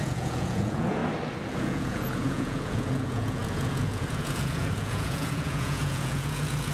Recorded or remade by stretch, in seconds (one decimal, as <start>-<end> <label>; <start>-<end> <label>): 0.0-1.0 remade; 1.0-1.5 recorded; 1.5-6.7 remade